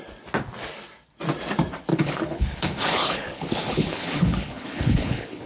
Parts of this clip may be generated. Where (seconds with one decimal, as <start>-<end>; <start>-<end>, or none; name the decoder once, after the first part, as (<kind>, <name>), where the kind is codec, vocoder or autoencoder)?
1.9-5.5 (codec, HILCodec)